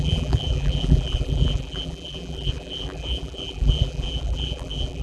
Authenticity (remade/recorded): remade